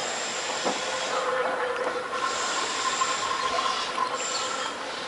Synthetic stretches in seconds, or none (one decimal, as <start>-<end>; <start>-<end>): none